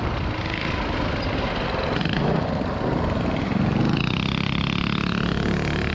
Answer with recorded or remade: recorded